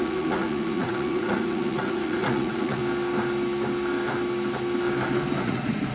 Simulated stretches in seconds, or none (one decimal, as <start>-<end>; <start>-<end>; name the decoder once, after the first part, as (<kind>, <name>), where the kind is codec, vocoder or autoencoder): 0.0-2.8 (vocoder, Vocos); 5.4-5.9